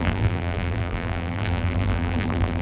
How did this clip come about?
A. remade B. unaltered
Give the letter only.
A